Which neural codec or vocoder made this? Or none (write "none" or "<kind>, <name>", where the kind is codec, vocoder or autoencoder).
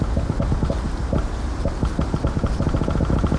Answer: none